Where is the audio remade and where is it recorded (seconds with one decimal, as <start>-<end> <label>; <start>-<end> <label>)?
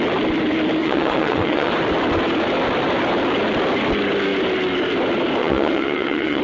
0.0-0.8 recorded; 0.8-1.7 remade; 1.7-5.4 recorded; 5.4-6.4 remade